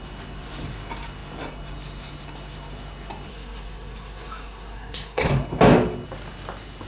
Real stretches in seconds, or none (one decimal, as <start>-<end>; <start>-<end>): 0.0-3.3; 5.3-6.9